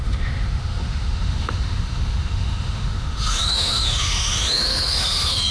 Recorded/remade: remade